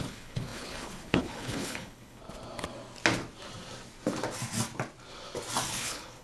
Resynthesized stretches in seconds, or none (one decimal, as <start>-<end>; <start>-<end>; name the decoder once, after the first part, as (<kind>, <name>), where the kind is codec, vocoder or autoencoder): 0.0-2.2 (codec, HILCodec); 5.7-6.2